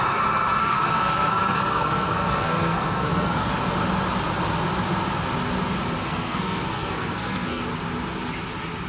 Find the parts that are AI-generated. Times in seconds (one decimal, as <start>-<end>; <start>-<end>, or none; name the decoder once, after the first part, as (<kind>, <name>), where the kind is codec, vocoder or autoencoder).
0.6-3.5 (codec, SNAC); 6.0-7.6